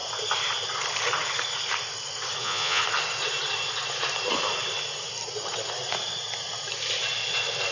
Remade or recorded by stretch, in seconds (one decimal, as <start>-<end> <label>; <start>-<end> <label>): 0.0-2.4 recorded; 2.4-2.8 remade; 2.8-7.7 recorded